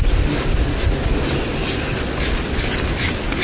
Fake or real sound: real